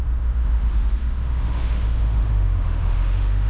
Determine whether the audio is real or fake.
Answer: fake